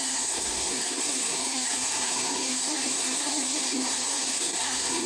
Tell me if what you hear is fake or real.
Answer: fake